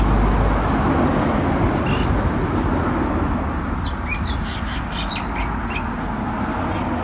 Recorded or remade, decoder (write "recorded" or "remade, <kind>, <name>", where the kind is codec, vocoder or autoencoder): recorded